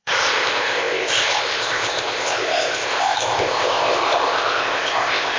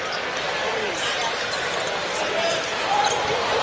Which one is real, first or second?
second